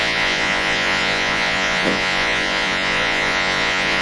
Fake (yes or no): yes